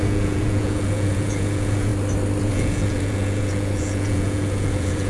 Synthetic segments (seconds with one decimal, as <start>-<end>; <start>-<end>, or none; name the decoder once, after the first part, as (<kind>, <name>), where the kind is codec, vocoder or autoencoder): 0.0-1.9 (vocoder, Vocos); 2.4-5.1